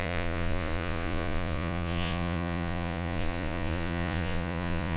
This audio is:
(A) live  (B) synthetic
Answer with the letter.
B